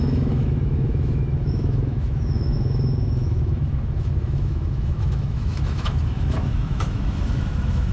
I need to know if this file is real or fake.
fake